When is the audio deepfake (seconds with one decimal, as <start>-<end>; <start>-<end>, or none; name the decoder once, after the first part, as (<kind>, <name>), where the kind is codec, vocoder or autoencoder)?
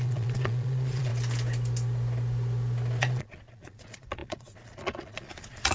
0.0-1.1 (vocoder, Vocos); 3.0-5.7